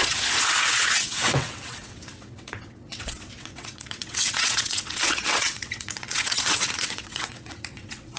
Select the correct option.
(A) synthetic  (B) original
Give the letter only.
A